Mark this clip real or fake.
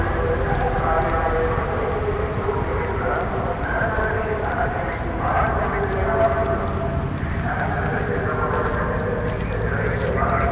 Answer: real